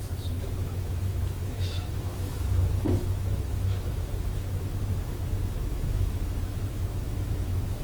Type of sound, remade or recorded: remade